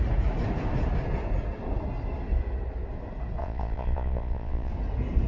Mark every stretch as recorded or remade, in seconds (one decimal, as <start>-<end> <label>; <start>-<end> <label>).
0.0-3.4 recorded; 3.4-4.7 remade; 4.7-5.3 recorded